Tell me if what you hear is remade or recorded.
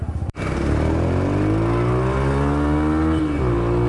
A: recorded